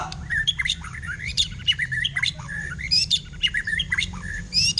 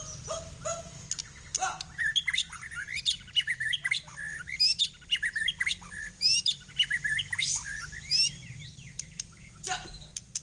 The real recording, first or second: second